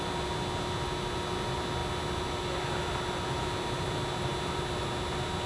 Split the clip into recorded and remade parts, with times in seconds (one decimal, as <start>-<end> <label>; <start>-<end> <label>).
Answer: 0.0-5.5 recorded